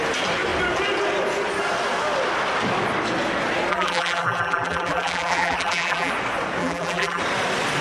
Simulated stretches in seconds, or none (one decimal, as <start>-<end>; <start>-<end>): 3.7-6.1; 6.6-7.2